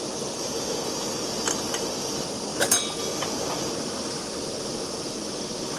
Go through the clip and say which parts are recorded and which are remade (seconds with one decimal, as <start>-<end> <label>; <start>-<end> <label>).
0.0-5.8 recorded

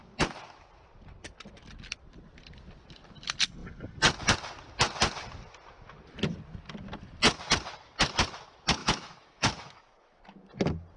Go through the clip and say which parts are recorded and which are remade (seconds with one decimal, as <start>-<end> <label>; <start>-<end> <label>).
0.0-8.8 recorded; 8.8-10.2 remade; 10.2-11.0 recorded